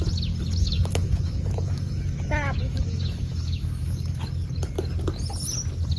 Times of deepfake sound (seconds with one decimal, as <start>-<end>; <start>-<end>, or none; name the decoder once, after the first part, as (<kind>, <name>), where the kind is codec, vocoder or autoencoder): 0.6-4.2 (autoencoder, DAC-VAE)